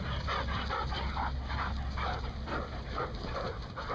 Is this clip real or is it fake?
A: real